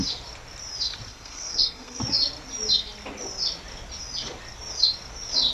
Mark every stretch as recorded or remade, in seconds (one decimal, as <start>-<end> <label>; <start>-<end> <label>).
0.0-1.1 recorded; 1.1-2.0 remade; 2.0-5.5 recorded